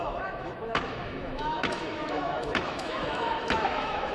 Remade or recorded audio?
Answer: remade